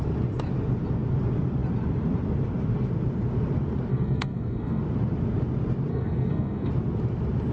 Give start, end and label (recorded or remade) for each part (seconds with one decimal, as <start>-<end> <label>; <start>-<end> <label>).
0.0-3.9 recorded; 3.9-4.8 remade; 4.8-5.9 recorded; 5.9-6.7 remade; 6.7-7.5 recorded